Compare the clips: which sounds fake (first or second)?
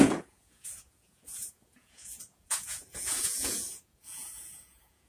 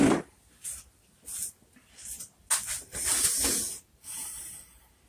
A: first